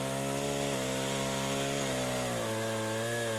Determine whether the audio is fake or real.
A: real